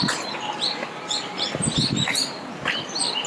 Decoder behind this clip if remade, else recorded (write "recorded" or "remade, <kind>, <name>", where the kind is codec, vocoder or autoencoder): recorded